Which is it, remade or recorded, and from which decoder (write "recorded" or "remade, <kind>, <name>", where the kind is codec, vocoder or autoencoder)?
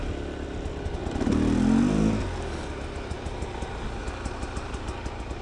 recorded